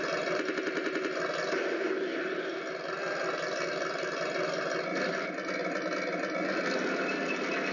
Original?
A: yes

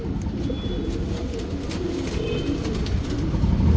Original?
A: yes